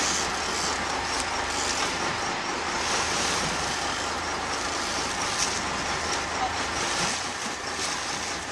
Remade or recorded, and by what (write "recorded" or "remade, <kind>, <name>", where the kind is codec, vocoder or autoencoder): recorded